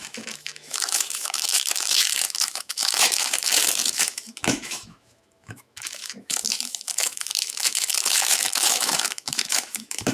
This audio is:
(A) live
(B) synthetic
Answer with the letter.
B